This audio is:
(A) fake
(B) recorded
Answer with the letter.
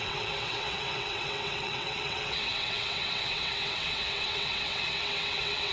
A